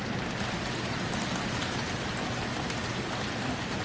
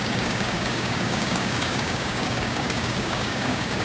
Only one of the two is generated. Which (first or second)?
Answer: second